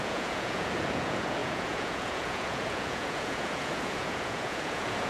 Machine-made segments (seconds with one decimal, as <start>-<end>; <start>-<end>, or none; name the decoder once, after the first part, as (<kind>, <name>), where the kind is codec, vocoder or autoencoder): 0.0-5.1 (vocoder, Vocos)